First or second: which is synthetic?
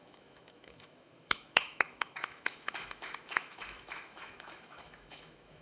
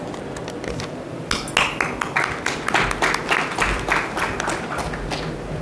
first